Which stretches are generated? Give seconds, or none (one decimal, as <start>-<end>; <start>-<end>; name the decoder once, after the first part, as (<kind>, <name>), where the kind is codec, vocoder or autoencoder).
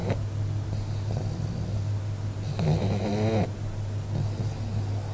none